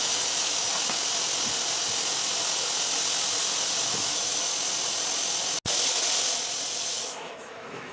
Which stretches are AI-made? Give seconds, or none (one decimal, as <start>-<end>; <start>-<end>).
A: 0.0-0.7; 3.8-4.5; 6.8-7.9